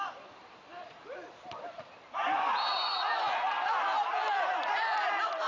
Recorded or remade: remade